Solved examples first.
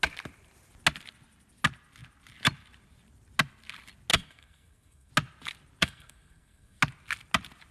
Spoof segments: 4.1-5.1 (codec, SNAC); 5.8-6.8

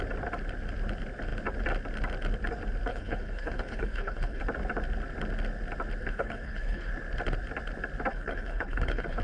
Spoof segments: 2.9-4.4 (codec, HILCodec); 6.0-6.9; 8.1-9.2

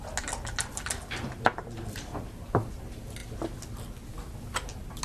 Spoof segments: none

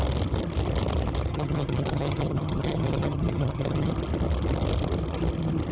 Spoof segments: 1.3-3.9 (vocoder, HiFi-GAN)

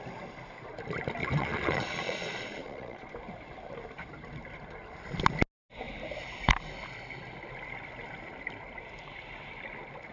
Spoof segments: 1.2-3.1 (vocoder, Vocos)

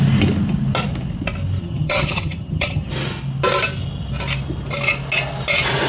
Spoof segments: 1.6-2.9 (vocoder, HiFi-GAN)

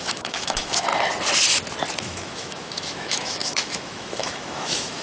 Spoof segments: 0.0-0.9 (autoencoder, DAC-VAE); 2.0-5.0

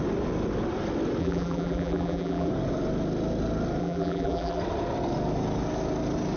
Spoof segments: 1.2-2.5 (vocoder, BigVGAN v2); 3.8-4.6